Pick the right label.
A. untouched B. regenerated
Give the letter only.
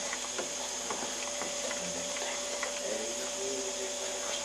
B